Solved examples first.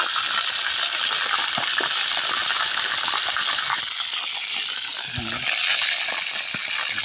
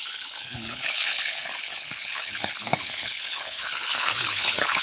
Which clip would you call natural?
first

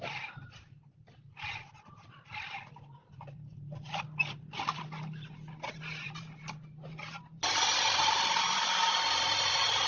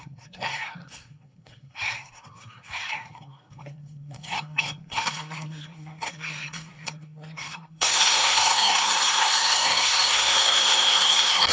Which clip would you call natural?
first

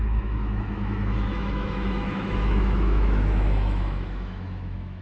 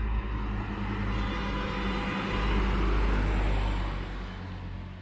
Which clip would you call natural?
second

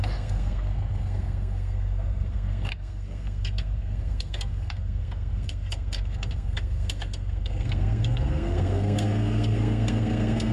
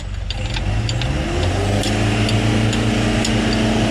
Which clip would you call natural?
second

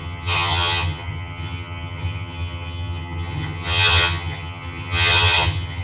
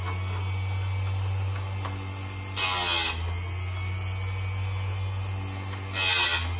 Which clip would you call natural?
second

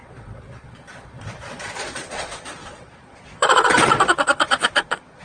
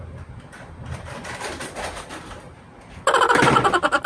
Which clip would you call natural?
second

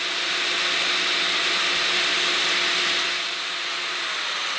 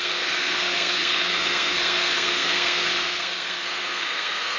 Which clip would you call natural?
first